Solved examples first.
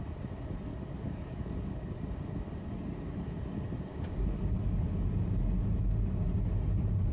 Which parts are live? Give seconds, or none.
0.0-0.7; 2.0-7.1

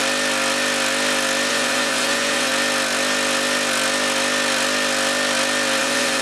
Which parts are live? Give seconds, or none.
0.0-1.5; 2.5-5.8

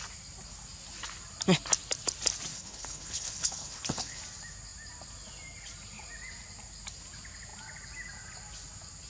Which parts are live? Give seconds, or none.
0.0-2.5; 4.2-9.1

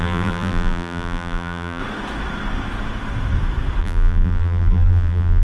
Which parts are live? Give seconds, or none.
1.8-3.8

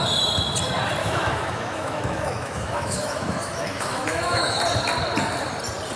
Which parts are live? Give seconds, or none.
0.0-1.0; 4.6-6.0

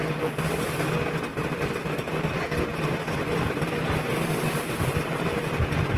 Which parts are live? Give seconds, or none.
0.0-1.3; 2.3-2.7; 5.5-6.0